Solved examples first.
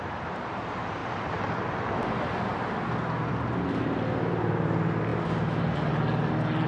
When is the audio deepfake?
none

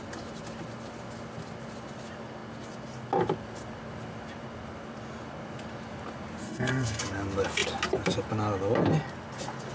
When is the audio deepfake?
6.4-7.0 (codec, SNAC)

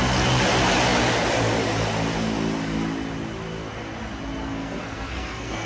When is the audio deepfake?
4.4-5.7 (codec, SNAC)